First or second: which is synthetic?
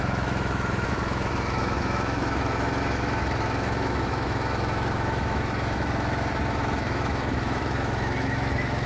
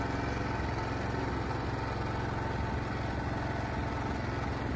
first